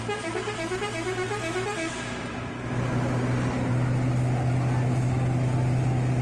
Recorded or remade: recorded